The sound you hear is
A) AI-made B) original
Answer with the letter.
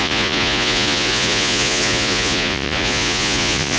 A